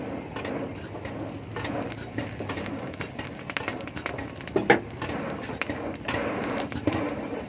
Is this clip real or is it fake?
real